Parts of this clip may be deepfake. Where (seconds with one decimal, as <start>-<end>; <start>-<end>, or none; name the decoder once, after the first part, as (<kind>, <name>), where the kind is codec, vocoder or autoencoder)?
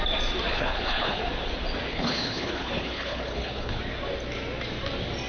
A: 0.5-1.2 (codec, HILCodec); 1.9-3.8